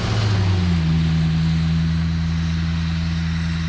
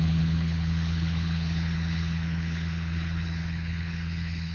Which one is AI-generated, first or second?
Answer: second